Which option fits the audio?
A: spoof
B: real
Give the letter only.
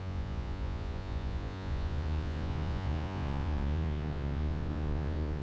A